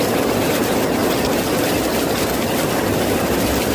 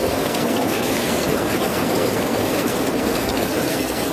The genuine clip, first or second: first